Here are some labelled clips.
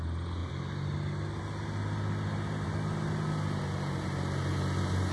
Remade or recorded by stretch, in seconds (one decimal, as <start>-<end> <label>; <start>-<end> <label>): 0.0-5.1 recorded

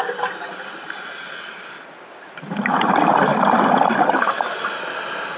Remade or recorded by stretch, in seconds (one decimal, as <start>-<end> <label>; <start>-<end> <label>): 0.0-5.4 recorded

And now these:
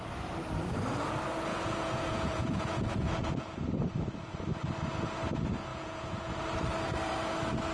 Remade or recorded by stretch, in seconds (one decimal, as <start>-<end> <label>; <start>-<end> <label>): 0.0-1.5 recorded; 1.5-3.6 remade; 3.6-5.7 recorded; 5.7-6.4 remade; 6.4-7.7 recorded

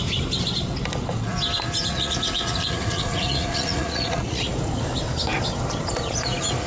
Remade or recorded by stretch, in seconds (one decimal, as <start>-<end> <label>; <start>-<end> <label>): 0.0-1.9 recorded; 1.9-4.5 remade; 4.5-6.7 recorded

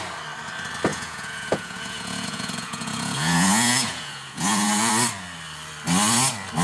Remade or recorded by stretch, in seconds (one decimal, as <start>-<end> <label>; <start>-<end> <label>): 0.0-0.9 recorded; 0.9-4.9 remade; 4.9-6.6 recorded

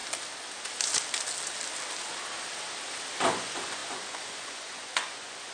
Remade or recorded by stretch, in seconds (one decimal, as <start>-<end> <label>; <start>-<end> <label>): 0.0-3.3 recorded; 3.3-5.5 remade